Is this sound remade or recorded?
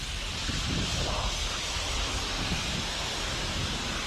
recorded